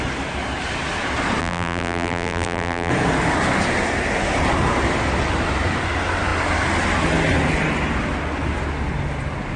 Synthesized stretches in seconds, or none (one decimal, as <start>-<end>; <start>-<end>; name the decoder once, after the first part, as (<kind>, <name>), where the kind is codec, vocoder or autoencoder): 1.4-2.9 (vocoder, BigVGAN v2)